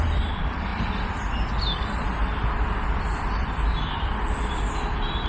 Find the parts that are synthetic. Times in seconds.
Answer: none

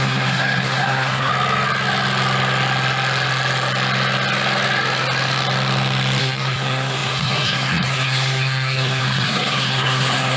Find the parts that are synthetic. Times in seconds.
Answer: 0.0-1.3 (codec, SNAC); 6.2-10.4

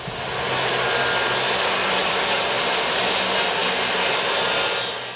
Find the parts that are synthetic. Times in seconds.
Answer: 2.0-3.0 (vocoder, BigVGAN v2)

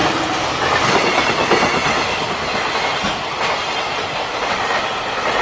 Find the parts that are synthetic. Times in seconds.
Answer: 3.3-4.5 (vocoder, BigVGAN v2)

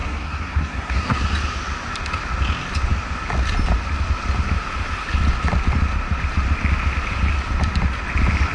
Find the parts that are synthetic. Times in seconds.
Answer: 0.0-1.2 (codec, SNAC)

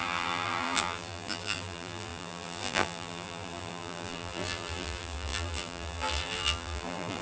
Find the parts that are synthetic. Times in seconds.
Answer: 0.0-7.2 (vocoder, BigVGAN v2)

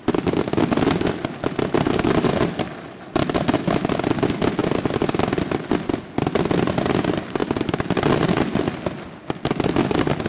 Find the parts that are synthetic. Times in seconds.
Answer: none